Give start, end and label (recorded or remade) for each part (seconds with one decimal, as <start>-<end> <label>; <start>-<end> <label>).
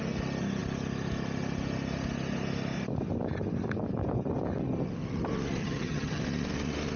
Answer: 0.0-5.6 recorded; 5.6-6.2 remade; 6.2-7.0 recorded